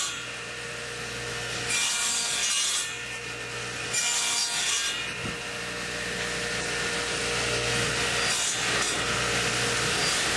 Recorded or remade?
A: recorded